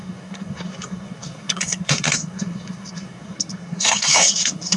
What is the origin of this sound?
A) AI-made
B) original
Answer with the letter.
A